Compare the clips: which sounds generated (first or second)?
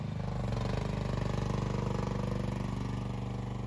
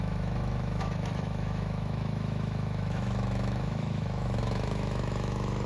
second